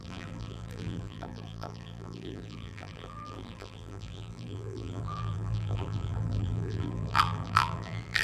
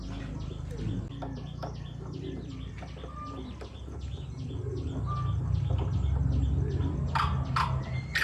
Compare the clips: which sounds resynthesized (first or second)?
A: first